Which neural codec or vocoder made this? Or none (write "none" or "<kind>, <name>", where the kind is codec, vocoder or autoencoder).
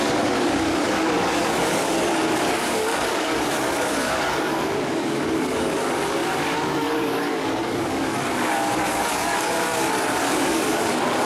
codec, DAC